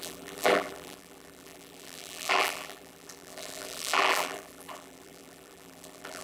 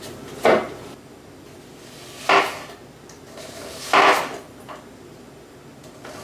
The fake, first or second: first